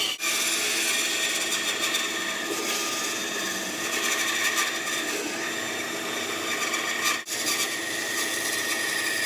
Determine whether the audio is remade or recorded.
recorded